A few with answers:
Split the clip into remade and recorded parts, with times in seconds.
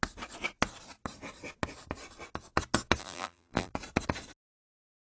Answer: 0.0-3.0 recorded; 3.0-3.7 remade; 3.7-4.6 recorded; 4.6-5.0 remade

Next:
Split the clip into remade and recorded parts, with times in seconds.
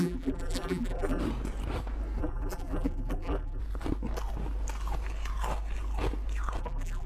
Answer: 0.0-1.2 remade; 1.2-2.2 recorded; 2.2-3.6 remade; 3.6-6.6 recorded; 6.6-7.1 remade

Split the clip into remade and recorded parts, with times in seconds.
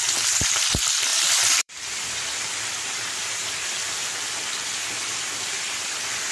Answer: 0.0-6.3 remade